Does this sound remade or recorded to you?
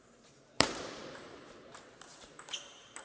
remade